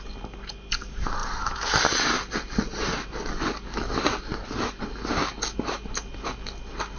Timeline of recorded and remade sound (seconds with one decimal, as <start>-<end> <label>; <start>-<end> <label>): 0.0-7.0 recorded